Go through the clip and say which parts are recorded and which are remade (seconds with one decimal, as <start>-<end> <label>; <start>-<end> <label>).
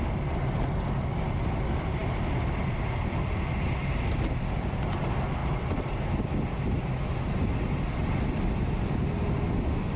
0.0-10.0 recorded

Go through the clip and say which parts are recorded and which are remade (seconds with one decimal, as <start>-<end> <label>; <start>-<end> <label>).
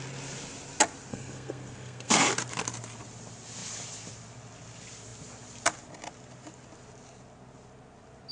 0.0-1.1 recorded; 1.1-2.2 remade; 2.2-8.3 recorded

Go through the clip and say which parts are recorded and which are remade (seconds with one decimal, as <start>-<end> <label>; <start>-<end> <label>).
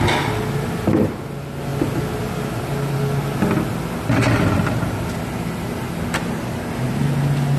0.0-7.6 recorded